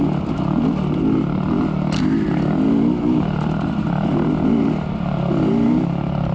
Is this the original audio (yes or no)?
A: yes